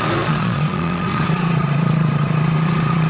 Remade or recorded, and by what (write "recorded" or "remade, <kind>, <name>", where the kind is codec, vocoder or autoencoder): remade, vocoder, Vocos